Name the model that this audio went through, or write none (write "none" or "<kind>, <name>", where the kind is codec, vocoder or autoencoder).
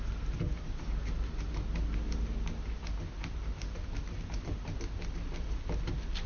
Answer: none